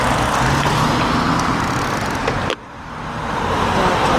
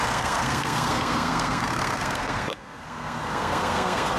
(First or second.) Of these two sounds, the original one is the first